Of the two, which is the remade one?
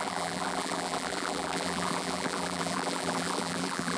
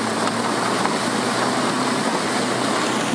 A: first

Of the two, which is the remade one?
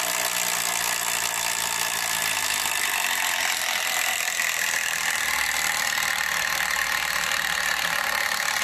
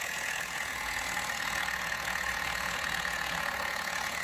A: second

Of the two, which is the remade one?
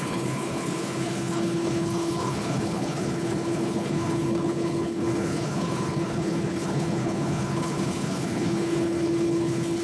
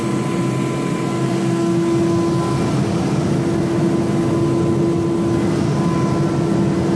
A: first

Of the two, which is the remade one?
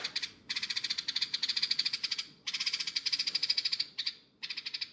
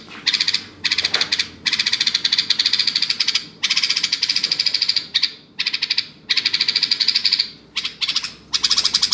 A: first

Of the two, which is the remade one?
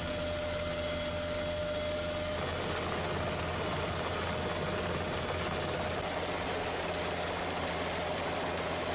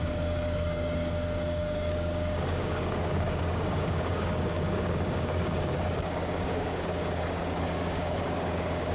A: second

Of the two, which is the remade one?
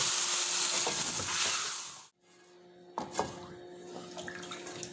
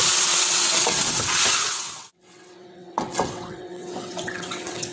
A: second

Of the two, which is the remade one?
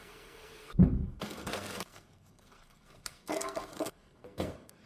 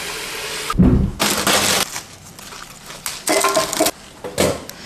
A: first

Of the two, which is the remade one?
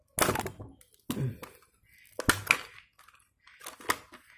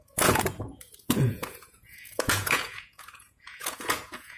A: second